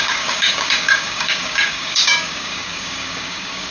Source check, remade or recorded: remade